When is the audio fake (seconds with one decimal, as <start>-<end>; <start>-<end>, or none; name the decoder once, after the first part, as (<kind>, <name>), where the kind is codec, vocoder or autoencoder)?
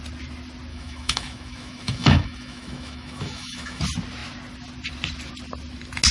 0.7-3.8 (autoencoder, DAC-VAE)